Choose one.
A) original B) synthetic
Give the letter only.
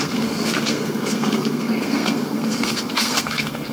B